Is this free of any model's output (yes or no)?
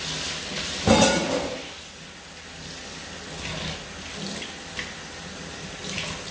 yes